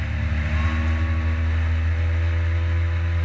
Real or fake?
real